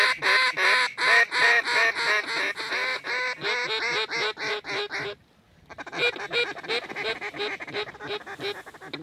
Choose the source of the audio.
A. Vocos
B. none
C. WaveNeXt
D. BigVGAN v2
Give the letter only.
B